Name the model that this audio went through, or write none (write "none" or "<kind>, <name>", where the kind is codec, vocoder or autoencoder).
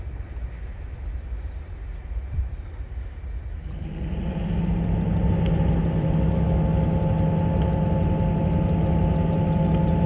none